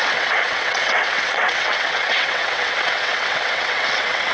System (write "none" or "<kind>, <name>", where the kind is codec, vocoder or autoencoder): vocoder, WaveNeXt